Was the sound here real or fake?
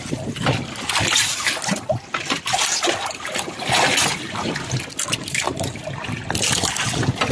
real